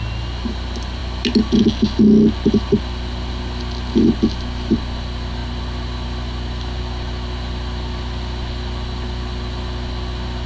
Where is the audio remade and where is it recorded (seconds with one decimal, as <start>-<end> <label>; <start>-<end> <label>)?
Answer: 0.0-10.5 recorded